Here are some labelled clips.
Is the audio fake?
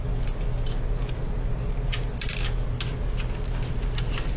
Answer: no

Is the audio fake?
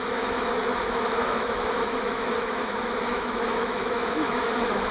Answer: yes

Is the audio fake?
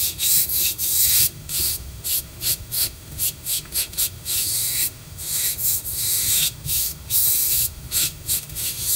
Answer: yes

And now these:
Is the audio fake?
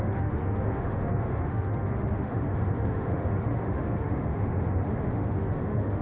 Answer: yes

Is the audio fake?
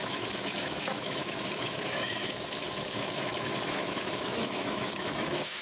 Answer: yes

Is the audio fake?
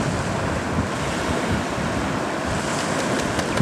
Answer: no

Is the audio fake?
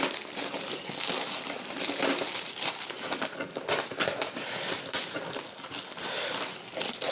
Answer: no